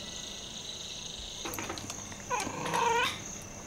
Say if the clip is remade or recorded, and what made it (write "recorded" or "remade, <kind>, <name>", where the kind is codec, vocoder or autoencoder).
recorded